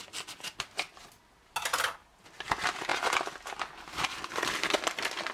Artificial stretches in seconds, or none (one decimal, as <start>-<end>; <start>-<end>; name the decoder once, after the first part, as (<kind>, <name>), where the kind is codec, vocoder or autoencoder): none